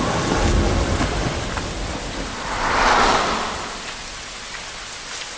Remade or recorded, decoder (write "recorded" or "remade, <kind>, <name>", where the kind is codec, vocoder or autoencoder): recorded